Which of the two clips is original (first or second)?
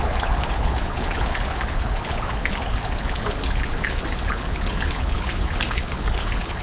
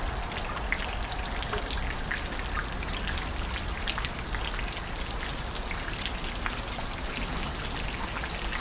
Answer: second